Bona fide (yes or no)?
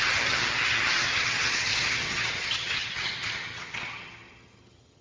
no